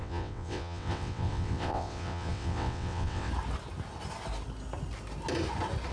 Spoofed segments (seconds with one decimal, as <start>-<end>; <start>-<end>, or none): 0.0-3.3